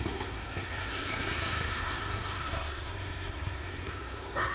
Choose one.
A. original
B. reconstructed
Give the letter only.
B